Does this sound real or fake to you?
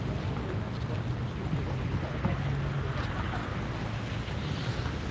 real